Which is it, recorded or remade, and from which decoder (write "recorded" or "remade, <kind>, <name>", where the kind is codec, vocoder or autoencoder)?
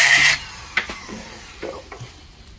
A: remade, vocoder, BigVGAN v2